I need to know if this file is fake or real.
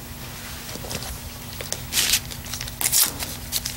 real